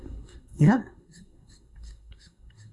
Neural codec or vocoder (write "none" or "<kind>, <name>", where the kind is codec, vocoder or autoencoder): codec, SNAC